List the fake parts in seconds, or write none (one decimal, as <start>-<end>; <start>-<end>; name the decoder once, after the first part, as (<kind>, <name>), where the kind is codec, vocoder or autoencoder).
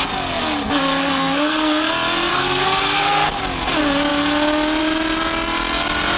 1.0-1.9 (codec, SNAC); 2.3-3.4